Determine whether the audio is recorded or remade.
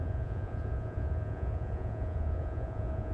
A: remade